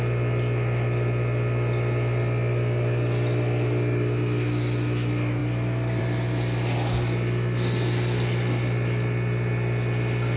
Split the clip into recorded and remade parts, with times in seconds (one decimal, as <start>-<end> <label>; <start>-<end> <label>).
0.0-10.4 recorded